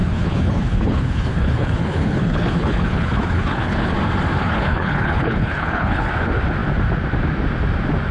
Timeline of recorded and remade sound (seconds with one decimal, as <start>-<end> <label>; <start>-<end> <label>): 0.0-3.9 remade; 3.9-4.4 recorded; 4.4-6.1 remade; 6.1-8.1 recorded